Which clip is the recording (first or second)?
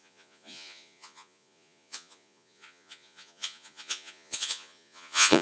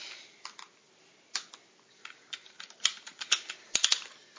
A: second